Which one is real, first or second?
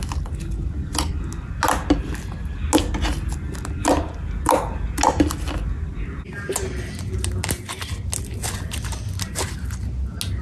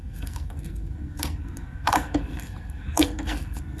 first